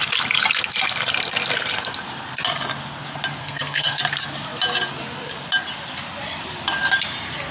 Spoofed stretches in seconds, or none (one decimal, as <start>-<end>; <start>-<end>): 3.4-4.0